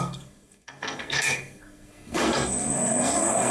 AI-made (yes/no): yes